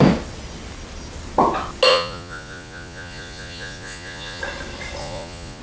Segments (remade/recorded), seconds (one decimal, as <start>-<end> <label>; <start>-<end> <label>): 0.0-1.9 recorded; 1.9-4.4 remade; 4.4-5.0 recorded; 5.0-5.6 remade